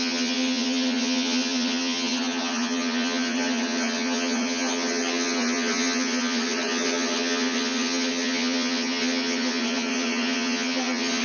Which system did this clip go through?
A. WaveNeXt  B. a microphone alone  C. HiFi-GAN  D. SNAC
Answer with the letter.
C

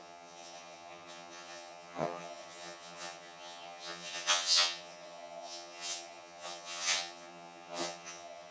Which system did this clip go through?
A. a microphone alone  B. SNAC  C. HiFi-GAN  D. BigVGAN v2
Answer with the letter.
C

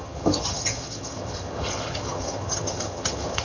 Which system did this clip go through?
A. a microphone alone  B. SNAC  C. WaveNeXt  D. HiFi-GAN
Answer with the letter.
D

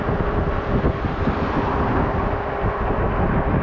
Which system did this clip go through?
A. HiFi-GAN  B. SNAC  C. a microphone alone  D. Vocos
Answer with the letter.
C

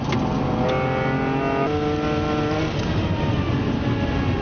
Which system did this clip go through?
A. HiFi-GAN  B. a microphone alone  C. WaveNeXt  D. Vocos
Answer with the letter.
B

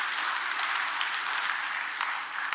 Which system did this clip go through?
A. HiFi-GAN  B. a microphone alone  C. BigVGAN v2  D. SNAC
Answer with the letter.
B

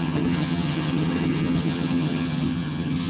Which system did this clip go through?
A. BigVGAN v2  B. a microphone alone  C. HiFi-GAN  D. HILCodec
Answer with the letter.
C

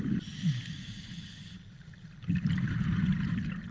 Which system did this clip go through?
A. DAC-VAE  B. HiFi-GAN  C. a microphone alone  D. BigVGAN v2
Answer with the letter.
C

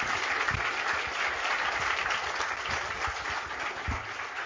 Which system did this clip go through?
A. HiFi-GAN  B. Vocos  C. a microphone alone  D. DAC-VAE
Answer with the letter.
C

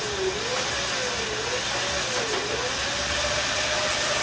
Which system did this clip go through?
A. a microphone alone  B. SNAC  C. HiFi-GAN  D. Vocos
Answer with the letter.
A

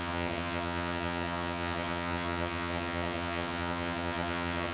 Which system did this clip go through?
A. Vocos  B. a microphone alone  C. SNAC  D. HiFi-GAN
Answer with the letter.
D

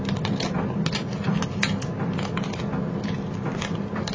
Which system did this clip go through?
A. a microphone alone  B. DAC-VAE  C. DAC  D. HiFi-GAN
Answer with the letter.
A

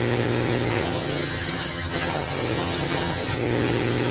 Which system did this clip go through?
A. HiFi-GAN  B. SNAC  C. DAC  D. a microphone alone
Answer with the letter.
A